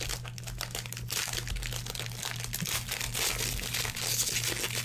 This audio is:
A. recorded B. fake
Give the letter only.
A